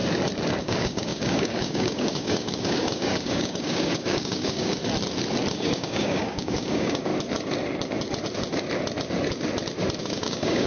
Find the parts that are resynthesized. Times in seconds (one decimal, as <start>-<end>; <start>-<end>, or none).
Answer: 0.6-4.8; 5.5-7.1; 10.0-10.7